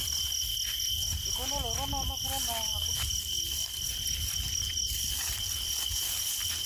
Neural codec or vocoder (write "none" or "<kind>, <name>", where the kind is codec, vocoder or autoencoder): none